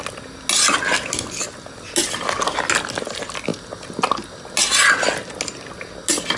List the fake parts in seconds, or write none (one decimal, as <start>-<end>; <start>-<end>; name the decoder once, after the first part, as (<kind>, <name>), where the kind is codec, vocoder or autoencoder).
none